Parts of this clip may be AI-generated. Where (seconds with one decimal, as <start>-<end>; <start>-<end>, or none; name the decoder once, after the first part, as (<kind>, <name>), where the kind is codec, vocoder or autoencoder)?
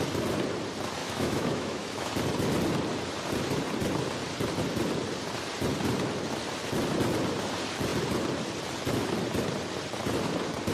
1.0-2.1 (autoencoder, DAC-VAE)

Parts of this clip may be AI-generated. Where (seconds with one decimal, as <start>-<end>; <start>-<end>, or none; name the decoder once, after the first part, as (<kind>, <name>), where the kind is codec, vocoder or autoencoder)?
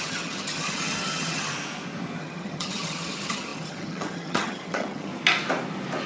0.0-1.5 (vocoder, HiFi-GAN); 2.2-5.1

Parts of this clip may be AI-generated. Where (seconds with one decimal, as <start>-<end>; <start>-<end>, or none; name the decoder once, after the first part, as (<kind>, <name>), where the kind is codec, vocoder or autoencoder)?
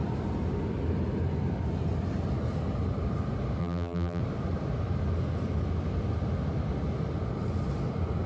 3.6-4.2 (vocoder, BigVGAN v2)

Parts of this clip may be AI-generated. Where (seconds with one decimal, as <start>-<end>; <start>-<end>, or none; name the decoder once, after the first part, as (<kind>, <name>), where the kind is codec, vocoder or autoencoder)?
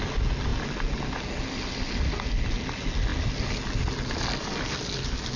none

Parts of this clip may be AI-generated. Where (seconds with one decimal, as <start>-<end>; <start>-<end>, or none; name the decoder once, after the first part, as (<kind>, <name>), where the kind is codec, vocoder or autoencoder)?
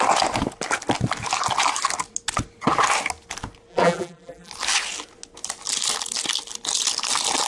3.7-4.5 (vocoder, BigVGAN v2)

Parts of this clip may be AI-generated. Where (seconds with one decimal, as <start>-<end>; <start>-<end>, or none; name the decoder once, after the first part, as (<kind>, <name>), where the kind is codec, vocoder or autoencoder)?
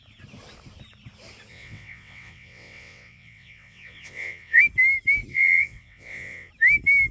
1.5-4.6 (vocoder, WaveNeXt); 5.3-6.5